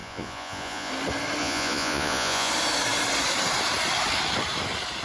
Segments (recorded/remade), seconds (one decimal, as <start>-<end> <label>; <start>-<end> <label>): 0.0-0.9 remade; 0.9-1.4 recorded; 1.4-2.5 remade; 2.5-5.0 recorded